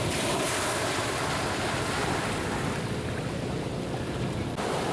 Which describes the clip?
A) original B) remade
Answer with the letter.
B